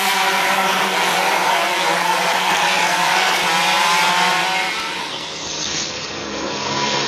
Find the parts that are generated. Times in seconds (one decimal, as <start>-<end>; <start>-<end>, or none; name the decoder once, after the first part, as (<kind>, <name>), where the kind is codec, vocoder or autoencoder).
0.0-3.4 (codec, SNAC); 5.0-7.1